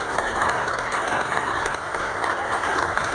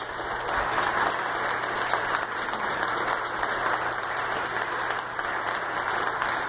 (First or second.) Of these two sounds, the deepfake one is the first